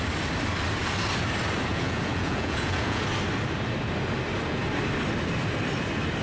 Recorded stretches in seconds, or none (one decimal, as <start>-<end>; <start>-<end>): 0.0-1.7; 3.0-6.2